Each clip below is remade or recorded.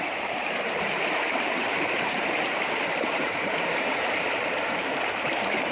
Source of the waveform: remade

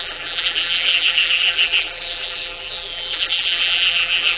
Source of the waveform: remade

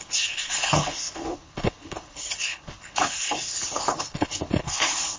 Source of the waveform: remade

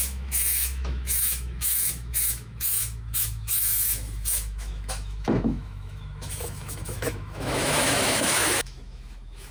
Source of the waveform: remade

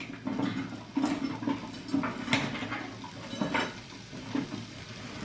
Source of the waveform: recorded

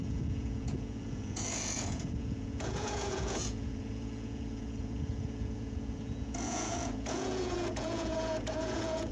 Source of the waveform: remade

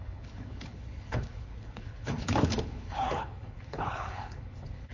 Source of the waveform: remade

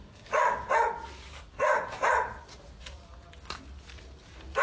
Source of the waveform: recorded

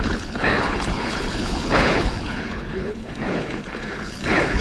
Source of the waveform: remade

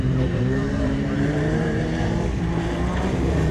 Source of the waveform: remade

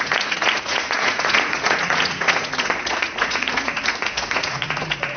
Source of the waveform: remade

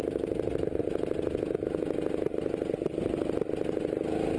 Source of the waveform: recorded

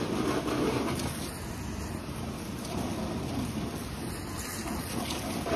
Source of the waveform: recorded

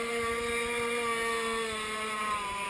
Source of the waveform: recorded